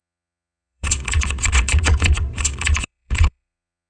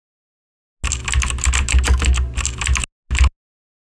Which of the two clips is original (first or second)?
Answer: second